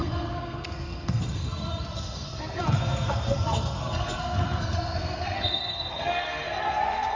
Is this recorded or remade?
remade